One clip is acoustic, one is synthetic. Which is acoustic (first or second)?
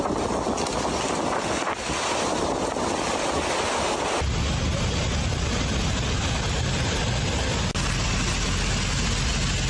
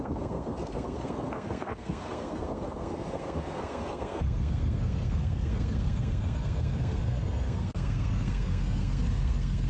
first